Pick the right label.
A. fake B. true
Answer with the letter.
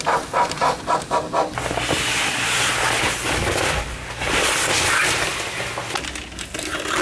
B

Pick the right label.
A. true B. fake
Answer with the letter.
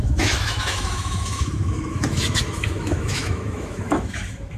B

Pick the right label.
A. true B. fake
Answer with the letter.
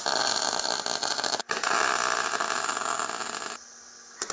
A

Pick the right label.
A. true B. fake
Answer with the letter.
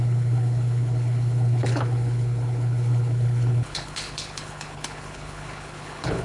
B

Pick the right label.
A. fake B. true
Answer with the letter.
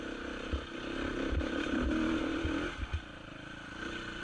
B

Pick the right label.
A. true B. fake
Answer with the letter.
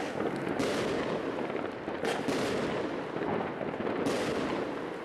A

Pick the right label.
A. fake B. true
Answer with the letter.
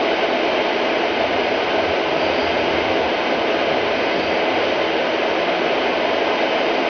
B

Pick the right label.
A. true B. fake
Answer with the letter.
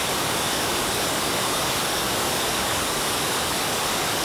B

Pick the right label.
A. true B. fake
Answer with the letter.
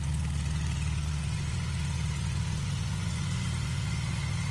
B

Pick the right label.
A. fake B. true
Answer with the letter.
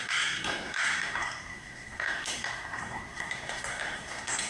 A